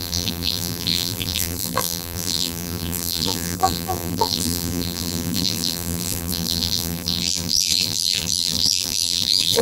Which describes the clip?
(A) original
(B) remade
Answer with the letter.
B